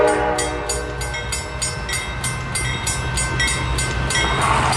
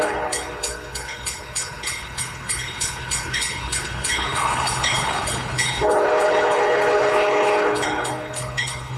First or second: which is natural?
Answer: first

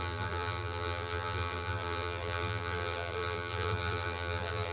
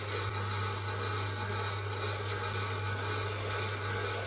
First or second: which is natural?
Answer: second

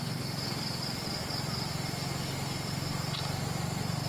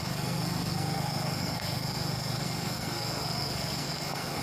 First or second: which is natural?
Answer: first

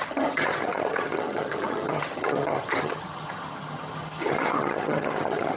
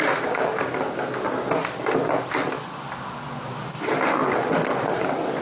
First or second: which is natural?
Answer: second